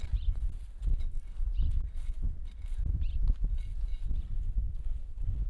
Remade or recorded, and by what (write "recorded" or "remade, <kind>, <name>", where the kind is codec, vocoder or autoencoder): remade, vocoder, BigVGAN v2